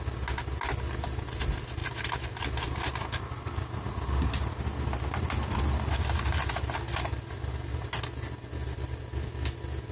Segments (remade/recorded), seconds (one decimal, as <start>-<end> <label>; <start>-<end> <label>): 0.0-9.9 recorded